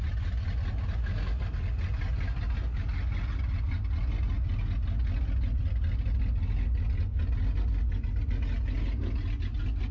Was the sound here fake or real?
real